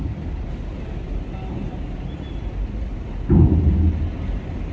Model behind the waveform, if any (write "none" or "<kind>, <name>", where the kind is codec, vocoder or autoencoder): none